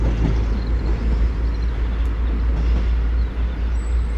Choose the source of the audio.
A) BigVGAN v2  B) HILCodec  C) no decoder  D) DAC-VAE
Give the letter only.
C